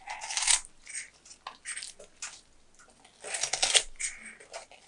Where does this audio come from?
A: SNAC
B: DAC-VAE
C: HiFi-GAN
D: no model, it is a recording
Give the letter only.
D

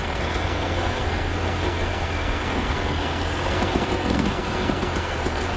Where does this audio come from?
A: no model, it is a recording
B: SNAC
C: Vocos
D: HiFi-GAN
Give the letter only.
B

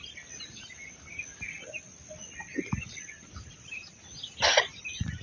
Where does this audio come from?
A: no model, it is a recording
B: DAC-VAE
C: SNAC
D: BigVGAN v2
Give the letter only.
A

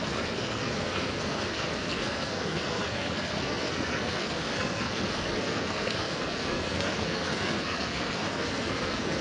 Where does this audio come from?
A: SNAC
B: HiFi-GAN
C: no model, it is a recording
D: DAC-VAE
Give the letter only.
A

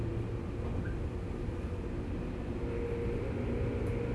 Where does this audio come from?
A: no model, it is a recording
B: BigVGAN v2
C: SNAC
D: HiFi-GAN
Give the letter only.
A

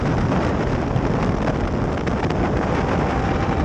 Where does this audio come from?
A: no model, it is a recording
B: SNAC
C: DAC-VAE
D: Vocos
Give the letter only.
A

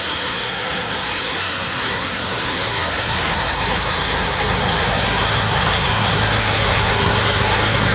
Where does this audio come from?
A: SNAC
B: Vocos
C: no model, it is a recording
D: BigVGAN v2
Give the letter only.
A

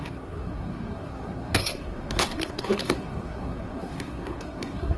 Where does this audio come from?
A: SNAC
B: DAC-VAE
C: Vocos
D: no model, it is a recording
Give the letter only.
A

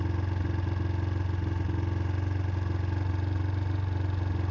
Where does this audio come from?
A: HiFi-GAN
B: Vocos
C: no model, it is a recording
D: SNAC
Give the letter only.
C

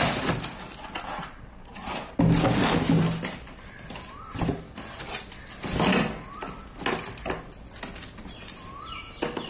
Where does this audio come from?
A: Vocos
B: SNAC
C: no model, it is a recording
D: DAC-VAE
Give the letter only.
C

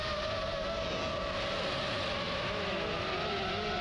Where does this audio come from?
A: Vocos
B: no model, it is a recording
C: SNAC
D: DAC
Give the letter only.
B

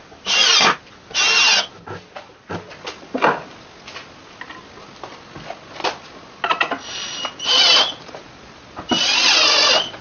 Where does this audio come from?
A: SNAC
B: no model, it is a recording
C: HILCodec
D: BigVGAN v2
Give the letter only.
B